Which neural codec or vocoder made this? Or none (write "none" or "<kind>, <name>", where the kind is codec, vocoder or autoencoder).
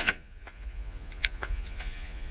vocoder, Vocos